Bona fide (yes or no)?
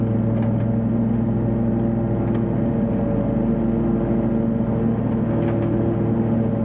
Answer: yes